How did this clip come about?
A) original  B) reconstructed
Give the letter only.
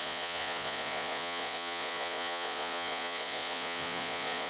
B